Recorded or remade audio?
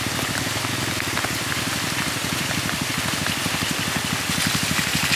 recorded